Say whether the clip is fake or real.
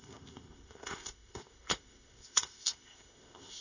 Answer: fake